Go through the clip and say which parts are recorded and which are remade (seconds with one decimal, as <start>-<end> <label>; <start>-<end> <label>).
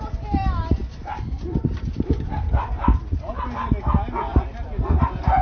0.0-0.8 recorded; 0.8-3.3 remade; 3.3-4.3 recorded; 4.3-5.0 remade; 5.0-5.4 recorded